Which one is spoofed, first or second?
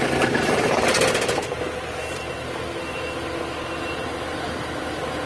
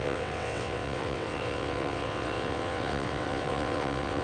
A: second